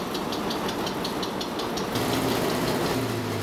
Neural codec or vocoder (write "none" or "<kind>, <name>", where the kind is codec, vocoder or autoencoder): none